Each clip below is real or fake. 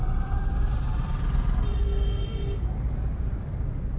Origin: real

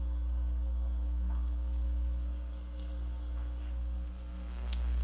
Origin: fake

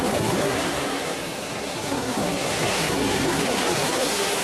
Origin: fake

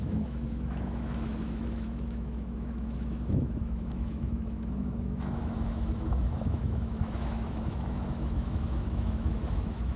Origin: fake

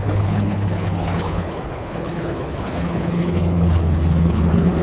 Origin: fake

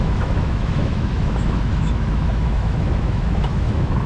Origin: fake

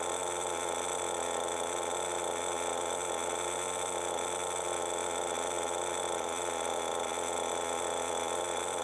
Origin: real